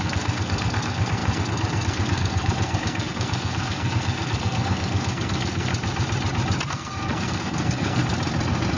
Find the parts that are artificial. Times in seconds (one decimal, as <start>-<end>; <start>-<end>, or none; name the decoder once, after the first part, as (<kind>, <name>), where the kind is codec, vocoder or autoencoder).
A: 0.0-5.7 (codec, SNAC); 6.7-8.0